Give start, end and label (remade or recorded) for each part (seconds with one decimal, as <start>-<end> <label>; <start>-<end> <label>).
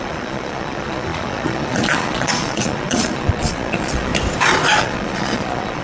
0.0-4.1 remade; 4.1-4.8 recorded; 4.8-5.8 remade